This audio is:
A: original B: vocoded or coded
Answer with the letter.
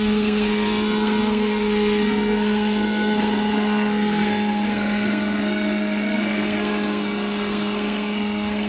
B